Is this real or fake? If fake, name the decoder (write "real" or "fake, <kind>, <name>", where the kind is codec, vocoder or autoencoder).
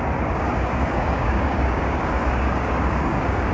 fake, codec, DAC